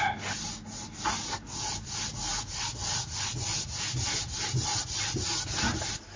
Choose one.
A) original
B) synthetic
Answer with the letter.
A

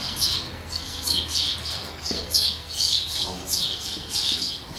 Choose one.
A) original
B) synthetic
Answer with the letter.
B